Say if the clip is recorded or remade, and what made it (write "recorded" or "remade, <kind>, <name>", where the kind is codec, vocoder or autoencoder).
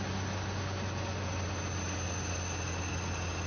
recorded